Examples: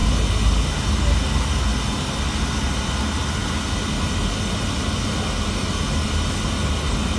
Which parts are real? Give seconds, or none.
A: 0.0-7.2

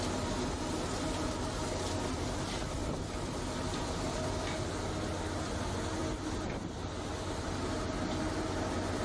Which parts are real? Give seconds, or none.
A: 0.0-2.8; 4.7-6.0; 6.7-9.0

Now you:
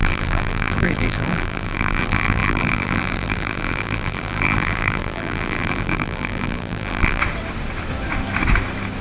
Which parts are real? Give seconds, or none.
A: 7.2-9.0

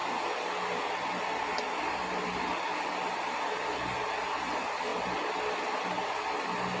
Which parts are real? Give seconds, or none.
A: 0.0-6.8

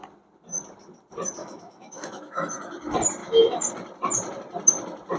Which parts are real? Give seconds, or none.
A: 0.0-1.4; 2.5-3.2; 3.7-5.2

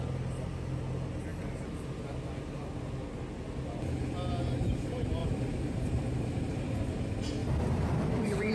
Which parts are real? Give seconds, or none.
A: 0.0-5.2; 6.8-7.4

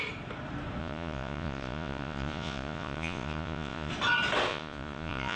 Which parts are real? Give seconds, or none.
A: 0.0-0.8; 3.9-4.5

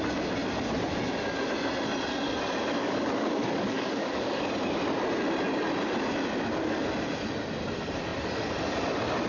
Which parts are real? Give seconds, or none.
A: 0.0-2.8; 4.5-9.3